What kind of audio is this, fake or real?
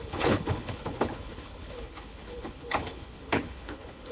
fake